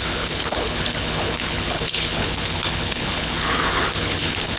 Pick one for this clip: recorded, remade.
remade